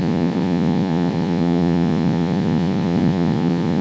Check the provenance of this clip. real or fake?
fake